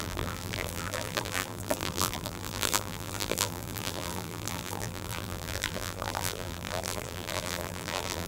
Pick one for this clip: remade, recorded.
remade